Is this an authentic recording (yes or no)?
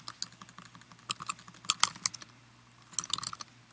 yes